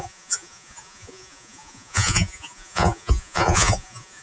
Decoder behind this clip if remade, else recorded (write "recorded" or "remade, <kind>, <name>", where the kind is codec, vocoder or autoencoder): remade, vocoder, Vocos